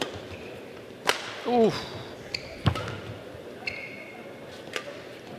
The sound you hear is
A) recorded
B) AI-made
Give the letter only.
A